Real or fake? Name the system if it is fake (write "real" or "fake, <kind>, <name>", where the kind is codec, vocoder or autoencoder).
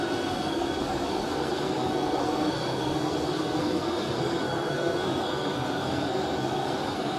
fake, codec, SNAC